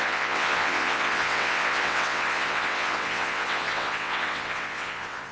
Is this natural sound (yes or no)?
no